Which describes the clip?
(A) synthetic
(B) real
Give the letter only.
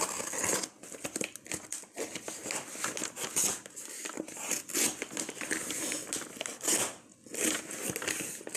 B